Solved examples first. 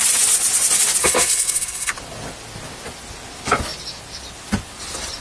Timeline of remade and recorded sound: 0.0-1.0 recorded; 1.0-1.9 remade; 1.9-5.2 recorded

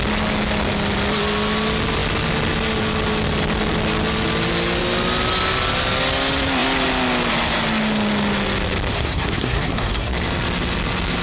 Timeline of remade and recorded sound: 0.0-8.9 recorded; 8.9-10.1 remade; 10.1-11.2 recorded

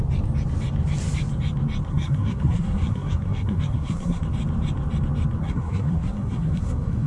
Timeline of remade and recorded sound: 0.0-1.9 recorded; 1.9-4.2 remade; 4.2-5.4 recorded; 5.4-7.1 remade